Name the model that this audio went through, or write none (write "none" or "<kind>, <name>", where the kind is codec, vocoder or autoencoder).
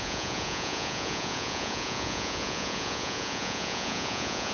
vocoder, Vocos